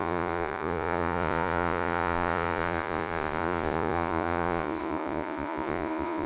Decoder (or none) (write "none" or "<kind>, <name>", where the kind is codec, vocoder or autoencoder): vocoder, Vocos